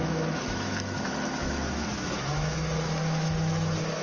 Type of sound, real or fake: fake